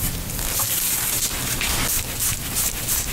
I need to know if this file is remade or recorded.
recorded